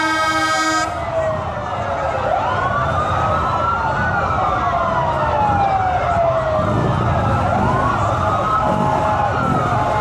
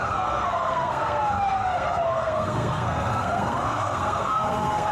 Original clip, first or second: first